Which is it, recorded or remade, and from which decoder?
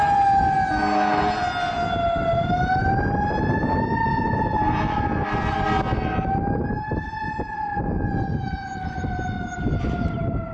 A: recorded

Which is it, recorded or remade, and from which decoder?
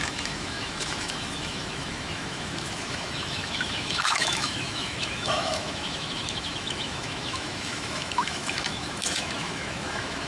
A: remade, autoencoder, DAC-VAE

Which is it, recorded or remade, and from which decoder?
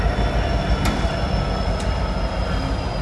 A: recorded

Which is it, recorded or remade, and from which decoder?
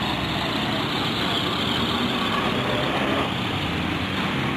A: recorded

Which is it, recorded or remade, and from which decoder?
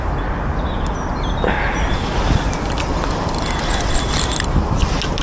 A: recorded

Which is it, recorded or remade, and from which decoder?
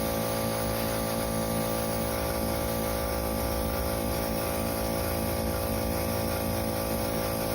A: recorded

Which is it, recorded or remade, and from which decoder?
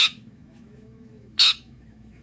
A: remade, autoencoder, DAC-VAE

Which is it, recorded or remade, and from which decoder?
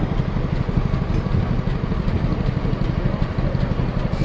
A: recorded